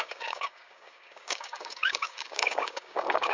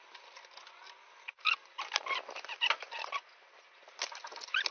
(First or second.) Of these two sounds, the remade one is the first